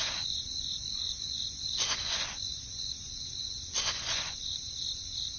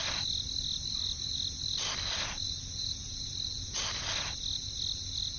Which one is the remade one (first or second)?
first